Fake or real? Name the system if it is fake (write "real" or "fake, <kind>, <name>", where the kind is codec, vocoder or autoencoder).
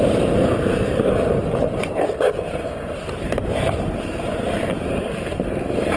fake, vocoder, BigVGAN v2